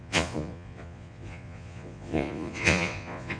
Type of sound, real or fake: fake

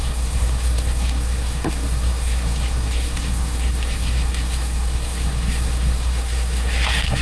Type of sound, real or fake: fake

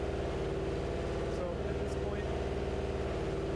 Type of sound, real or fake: real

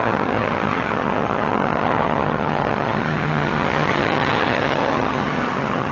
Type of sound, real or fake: fake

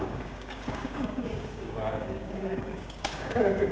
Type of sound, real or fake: fake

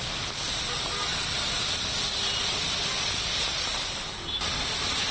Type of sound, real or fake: real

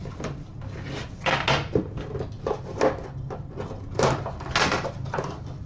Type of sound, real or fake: real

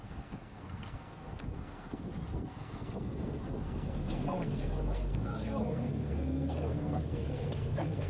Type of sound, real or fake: fake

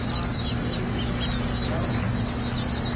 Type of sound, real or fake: real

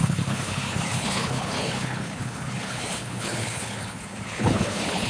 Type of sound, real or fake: fake